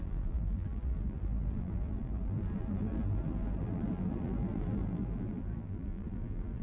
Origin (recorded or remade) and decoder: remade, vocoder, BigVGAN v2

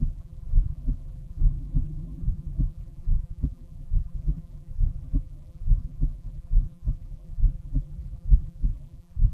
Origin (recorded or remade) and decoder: remade, vocoder, BigVGAN v2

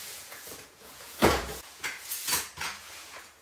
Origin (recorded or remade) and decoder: remade, vocoder, Vocos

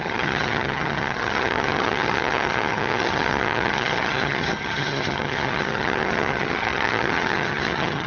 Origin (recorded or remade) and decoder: remade, vocoder, HiFi-GAN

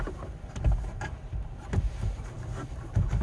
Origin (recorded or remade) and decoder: remade, vocoder, BigVGAN v2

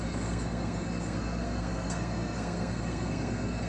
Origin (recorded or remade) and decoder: remade, codec, SNAC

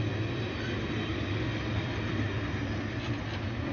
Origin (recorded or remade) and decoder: recorded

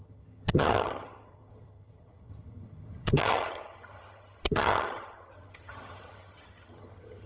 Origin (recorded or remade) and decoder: remade, vocoder, HiFi-GAN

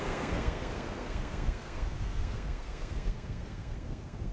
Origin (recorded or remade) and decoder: remade, codec, SNAC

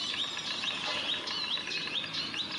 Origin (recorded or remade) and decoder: recorded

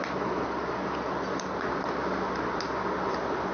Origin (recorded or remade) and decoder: recorded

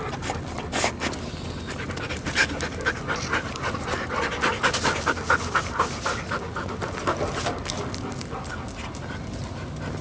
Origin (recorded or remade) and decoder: recorded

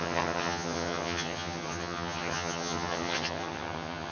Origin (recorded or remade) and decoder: remade, vocoder, HiFi-GAN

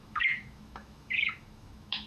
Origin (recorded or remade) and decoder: remade, autoencoder, DAC-VAE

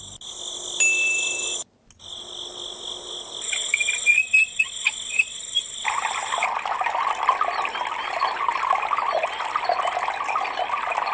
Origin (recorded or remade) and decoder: recorded